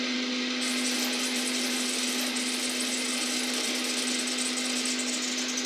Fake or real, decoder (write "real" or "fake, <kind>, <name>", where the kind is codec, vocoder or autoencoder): real